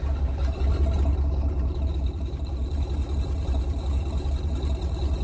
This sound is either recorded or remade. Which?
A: remade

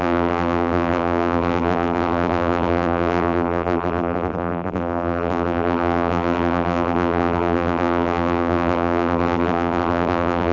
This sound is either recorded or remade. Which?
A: remade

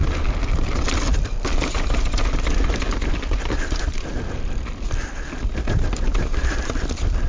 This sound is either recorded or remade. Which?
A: remade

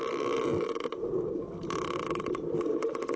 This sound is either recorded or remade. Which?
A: recorded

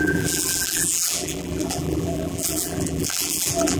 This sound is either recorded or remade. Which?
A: remade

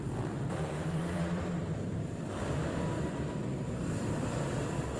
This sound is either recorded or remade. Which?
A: remade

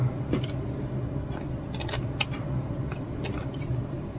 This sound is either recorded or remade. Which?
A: recorded